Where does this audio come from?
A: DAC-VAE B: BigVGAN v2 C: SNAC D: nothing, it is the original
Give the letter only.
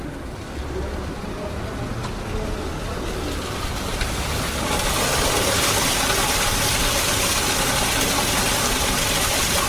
D